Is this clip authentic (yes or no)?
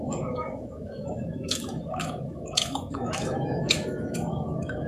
no